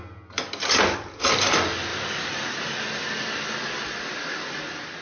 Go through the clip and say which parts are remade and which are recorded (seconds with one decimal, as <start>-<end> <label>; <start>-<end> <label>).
0.0-5.0 recorded